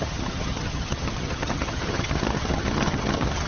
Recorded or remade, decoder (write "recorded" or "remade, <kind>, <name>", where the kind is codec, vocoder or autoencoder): remade, vocoder, HiFi-GAN